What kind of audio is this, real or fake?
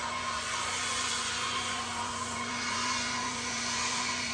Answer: fake